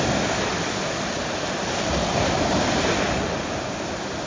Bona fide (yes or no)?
yes